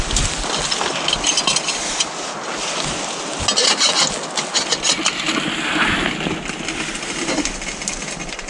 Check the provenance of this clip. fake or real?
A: real